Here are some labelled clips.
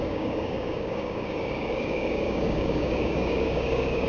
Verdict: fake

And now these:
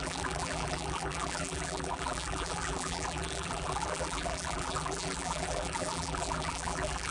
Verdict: fake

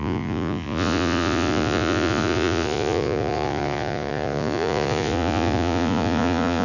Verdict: fake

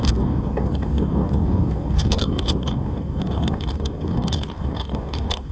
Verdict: fake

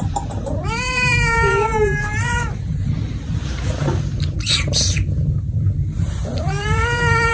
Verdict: fake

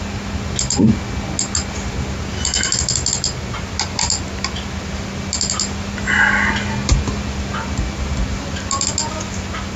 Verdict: real